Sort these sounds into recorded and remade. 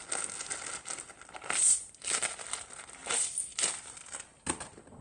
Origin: recorded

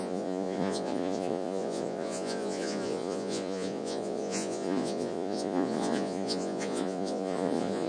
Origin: remade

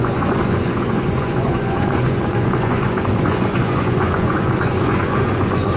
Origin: remade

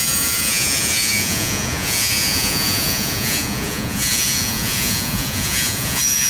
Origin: remade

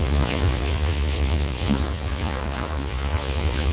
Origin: remade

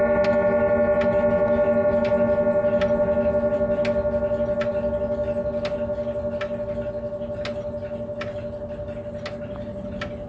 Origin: recorded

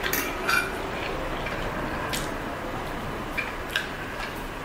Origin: recorded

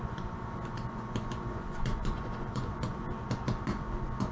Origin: remade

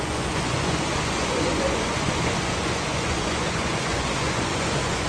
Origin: remade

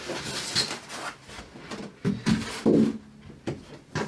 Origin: recorded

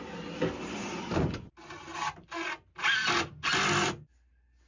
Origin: recorded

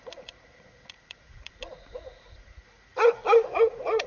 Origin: remade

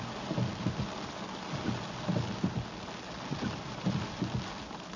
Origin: recorded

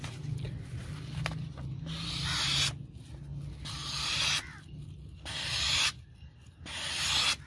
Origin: recorded